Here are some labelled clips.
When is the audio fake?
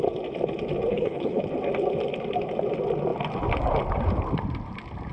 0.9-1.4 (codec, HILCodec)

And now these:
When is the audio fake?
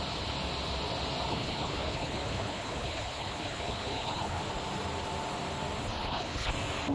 1.3-4.4 (codec, HILCodec); 6.0-6.5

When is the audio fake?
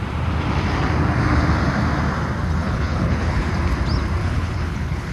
2.6-3.4 (codec, HILCodec); 4.2-5.1